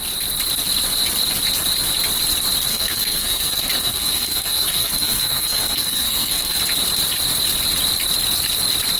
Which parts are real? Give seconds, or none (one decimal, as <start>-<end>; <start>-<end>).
0.0-2.7; 6.6-9.0